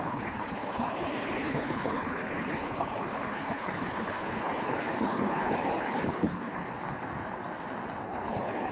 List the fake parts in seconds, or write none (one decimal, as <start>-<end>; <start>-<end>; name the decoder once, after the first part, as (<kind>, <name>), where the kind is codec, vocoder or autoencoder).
0.0-6.6 (codec, HILCodec); 8.0-8.7